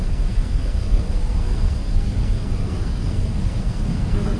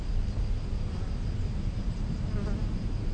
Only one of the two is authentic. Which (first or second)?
second